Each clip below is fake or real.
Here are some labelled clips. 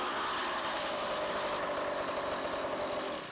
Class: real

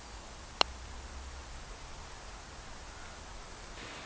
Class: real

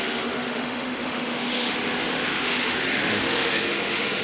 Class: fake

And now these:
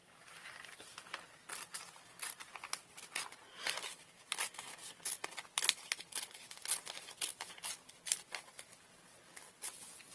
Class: real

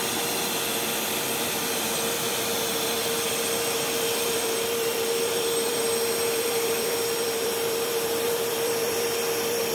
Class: fake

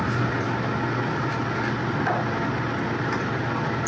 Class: real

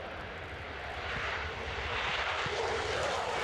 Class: fake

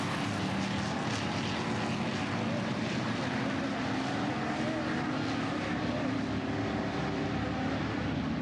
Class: real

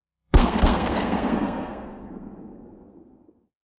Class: fake